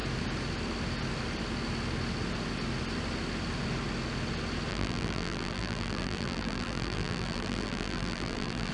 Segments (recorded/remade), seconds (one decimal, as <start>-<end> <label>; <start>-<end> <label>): 0.0-4.7 recorded; 4.7-8.7 remade